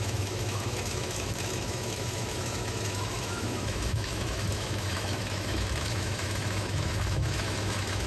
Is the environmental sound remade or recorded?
remade